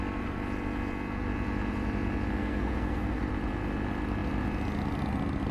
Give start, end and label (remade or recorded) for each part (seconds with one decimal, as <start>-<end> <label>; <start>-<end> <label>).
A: 0.0-2.4 recorded; 2.4-3.2 remade; 3.2-5.5 recorded